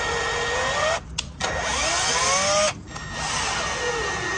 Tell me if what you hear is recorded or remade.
recorded